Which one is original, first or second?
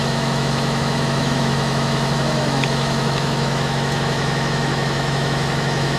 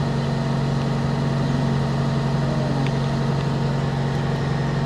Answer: second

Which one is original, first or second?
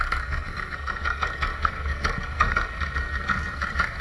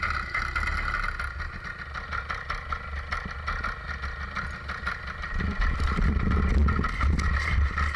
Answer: second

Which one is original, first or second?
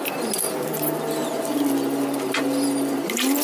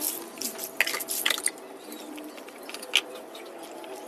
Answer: second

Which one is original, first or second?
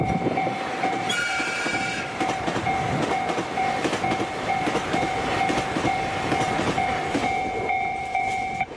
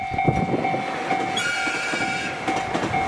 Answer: second